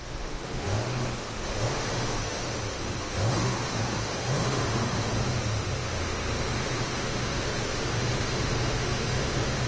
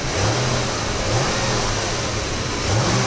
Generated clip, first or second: first